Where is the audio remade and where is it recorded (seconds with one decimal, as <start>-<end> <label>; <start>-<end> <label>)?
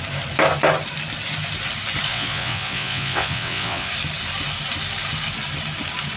0.0-2.1 recorded; 2.1-3.9 remade; 3.9-6.2 recorded